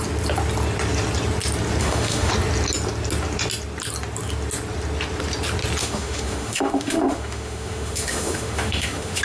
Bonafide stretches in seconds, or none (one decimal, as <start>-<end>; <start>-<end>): 0.0-1.8; 2.3-5.8